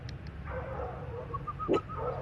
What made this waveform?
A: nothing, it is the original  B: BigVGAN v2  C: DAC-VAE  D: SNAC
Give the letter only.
A